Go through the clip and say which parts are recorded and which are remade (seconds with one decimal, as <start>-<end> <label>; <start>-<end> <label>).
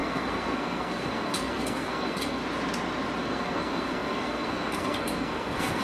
0.0-2.4 remade; 2.4-3.2 recorded; 3.2-5.8 remade